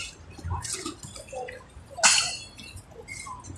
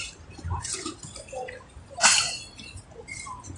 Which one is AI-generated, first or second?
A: second